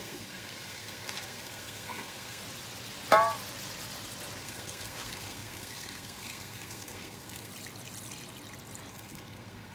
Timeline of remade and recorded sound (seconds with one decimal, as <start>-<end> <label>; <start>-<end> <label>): 0.0-2.4 remade; 2.4-4.4 recorded; 4.4-7.5 remade; 7.5-8.9 recorded; 8.9-9.7 remade